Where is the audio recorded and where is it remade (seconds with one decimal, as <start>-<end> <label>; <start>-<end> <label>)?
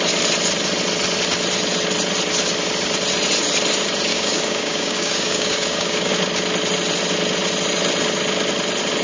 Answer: 0.0-4.1 recorded; 4.1-6.1 remade; 6.1-9.0 recorded